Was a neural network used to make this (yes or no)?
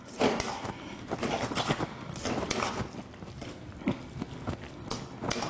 no